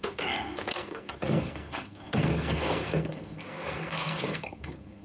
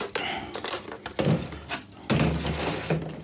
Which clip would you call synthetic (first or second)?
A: first